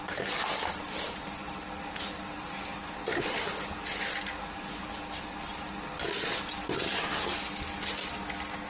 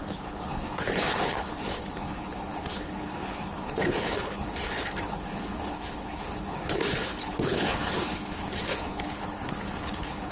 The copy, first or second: second